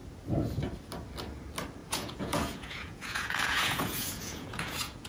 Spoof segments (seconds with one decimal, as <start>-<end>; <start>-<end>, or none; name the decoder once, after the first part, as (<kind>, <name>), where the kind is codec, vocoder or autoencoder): 1.8-5.1 (vocoder, Vocos)